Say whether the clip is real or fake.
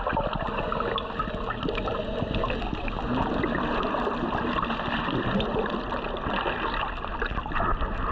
real